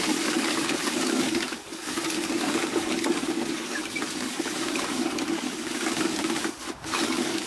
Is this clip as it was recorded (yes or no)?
no